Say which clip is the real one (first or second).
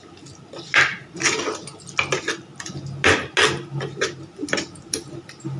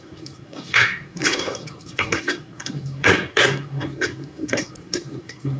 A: first